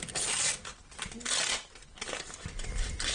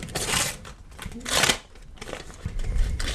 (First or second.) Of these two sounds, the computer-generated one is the second